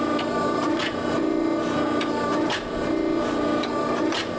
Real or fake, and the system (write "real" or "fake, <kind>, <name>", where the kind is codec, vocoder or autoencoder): real